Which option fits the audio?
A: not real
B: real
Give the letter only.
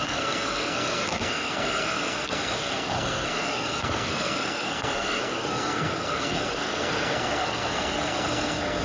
A